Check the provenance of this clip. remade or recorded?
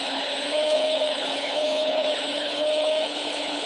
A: remade